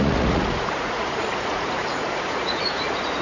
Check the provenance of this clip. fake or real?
fake